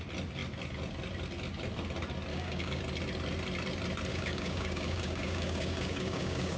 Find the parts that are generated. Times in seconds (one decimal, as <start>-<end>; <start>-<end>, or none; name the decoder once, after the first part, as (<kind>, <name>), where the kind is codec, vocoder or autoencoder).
2.3-2.8 (codec, DAC); 4.1-6.6